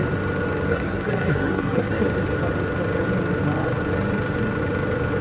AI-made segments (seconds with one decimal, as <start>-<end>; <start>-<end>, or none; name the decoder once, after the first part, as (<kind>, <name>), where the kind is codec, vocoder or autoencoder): 0.7-2.0 (codec, SNAC)